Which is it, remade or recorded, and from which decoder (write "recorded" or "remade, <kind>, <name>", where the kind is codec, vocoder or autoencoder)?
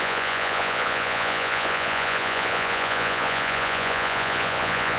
remade, vocoder, Vocos